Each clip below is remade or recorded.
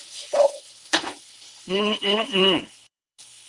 remade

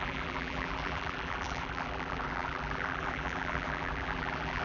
remade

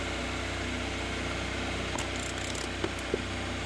recorded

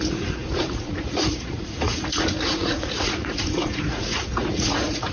remade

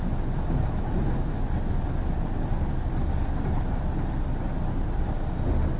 recorded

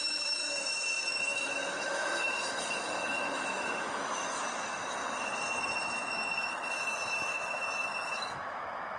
remade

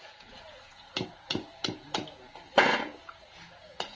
remade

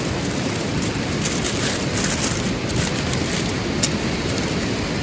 recorded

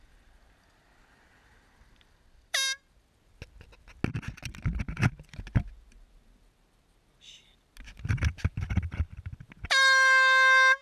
recorded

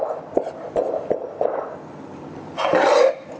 recorded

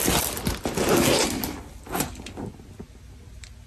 recorded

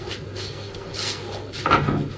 remade